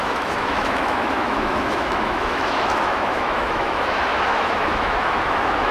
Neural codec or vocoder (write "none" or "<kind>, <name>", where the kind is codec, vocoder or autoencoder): autoencoder, DAC-VAE